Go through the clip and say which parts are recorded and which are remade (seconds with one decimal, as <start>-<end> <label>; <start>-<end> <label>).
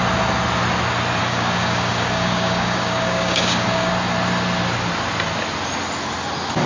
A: 0.0-1.2 recorded; 1.2-3.9 remade; 3.9-6.7 recorded